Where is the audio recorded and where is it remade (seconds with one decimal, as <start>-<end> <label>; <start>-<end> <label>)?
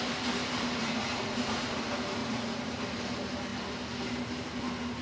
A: 0.0-0.8 recorded; 0.8-1.8 remade; 1.8-2.2 recorded; 2.2-2.8 remade; 2.8-5.0 recorded